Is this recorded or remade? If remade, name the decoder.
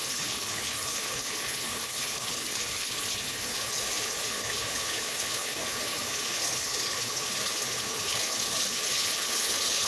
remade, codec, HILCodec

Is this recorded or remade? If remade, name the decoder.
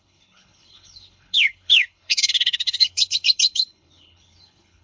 remade, codec, HILCodec